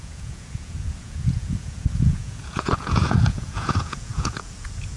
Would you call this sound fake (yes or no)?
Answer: yes